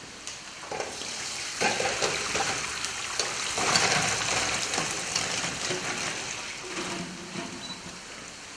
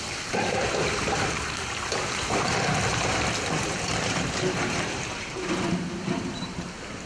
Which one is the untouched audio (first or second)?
first